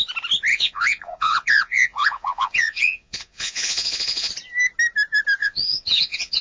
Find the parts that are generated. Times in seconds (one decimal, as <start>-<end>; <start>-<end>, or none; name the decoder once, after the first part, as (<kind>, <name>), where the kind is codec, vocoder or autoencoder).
0.5-4.3 (vocoder, Vocos); 5.4-6.4